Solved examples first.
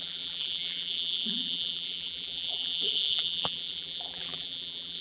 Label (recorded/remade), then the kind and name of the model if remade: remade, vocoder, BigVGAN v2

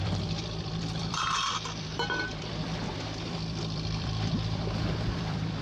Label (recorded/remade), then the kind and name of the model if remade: remade, vocoder, BigVGAN v2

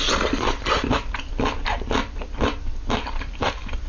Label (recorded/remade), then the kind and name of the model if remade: remade, vocoder, BigVGAN v2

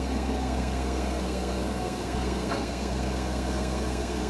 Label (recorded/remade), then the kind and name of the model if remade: remade, codec, SNAC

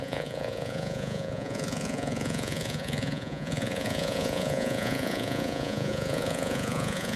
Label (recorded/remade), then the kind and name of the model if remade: remade, vocoder, Vocos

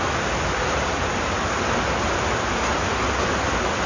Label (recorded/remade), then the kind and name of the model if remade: recorded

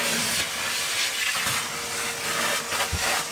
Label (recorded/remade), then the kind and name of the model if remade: recorded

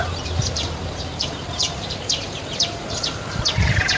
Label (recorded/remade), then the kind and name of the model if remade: remade, vocoder, BigVGAN v2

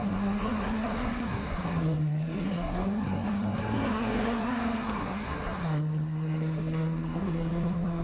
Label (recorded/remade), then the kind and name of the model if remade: remade, codec, SNAC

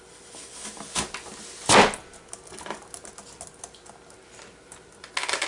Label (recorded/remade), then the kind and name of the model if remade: recorded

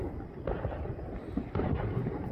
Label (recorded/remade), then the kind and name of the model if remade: recorded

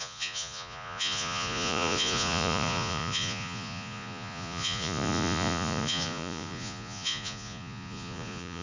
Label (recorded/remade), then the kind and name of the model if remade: remade, vocoder, Vocos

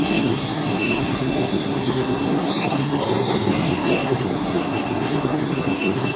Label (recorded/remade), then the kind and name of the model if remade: remade, codec, SNAC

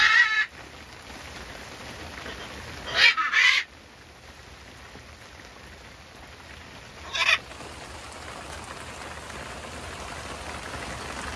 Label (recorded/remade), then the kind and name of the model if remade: recorded